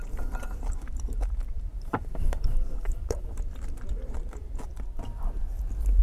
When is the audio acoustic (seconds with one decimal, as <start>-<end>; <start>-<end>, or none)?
4.7-6.0